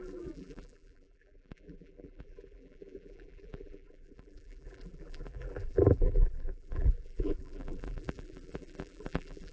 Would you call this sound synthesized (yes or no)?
yes